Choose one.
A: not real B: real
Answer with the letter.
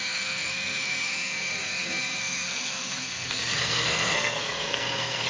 A